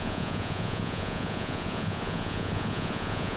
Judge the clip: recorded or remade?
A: remade